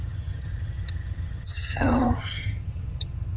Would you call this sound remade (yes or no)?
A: yes